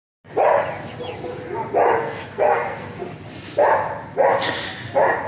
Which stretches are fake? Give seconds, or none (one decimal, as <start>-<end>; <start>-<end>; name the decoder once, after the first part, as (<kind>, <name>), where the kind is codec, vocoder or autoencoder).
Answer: 2.0-3.0 (codec, SNAC)